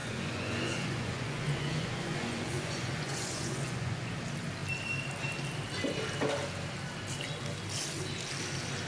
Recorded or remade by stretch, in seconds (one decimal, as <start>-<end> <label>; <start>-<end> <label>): 0.0-4.1 remade; 4.1-8.9 recorded